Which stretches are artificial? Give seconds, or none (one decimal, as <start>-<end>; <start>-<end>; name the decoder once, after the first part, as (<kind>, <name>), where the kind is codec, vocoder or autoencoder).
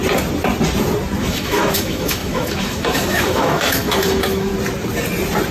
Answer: 1.2-4.5 (autoencoder, DAC-VAE)